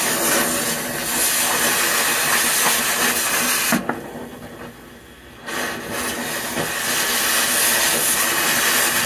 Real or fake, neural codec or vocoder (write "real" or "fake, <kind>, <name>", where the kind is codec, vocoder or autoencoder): real